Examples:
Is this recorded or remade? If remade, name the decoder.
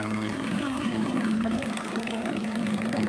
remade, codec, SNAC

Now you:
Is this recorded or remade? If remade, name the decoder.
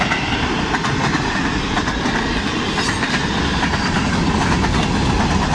recorded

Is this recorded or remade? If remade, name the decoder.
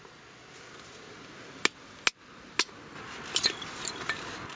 recorded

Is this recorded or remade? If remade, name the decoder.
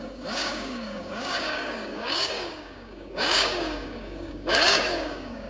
remade, codec, DAC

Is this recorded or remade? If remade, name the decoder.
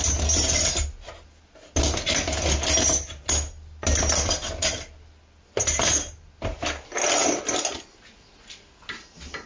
recorded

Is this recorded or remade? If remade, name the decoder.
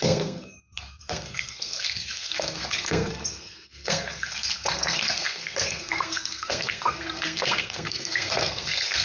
remade, codec, SNAC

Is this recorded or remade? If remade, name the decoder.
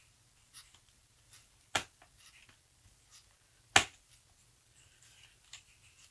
recorded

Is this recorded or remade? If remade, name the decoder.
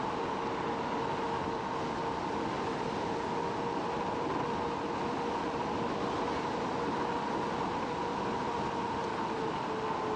recorded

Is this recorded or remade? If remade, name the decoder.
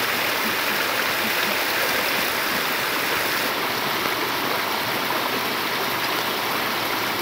recorded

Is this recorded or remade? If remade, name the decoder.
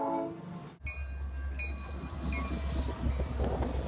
recorded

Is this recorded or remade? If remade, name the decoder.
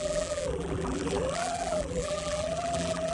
remade, vocoder, BigVGAN v2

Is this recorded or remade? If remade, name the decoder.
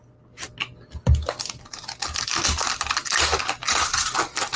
recorded